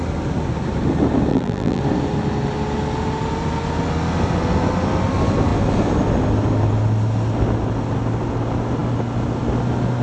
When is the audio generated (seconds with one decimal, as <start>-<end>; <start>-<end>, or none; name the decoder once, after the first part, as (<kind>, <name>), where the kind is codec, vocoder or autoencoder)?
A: 1.3-1.8 (vocoder, BigVGAN v2)